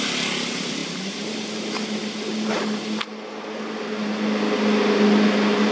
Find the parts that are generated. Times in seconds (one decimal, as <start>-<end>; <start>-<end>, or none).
none